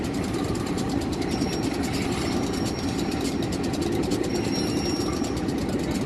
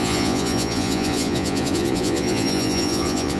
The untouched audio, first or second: first